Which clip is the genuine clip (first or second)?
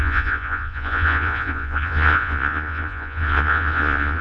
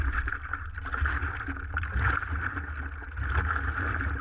second